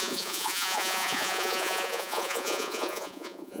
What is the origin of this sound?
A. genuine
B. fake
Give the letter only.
B